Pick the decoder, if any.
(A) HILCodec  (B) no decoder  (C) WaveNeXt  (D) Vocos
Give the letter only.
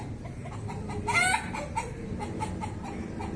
B